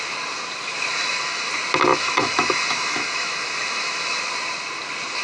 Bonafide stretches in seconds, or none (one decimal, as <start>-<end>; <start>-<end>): 0.0-0.9; 1.5-1.9; 4.2-5.2